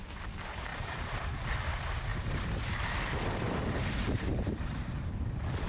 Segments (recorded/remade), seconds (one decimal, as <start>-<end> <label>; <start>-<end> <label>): 0.0-0.7 recorded; 0.7-1.3 remade; 1.3-2.1 recorded; 2.1-5.7 remade